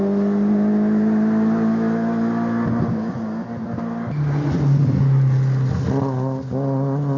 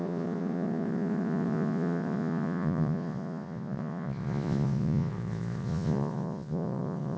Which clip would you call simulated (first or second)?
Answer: second